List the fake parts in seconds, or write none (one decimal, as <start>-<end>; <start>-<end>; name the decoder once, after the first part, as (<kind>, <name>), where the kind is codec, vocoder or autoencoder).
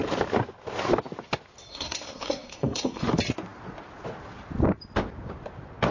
1.7-3.0 (codec, SNAC)